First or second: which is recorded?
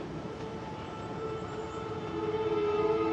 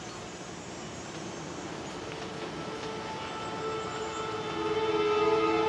second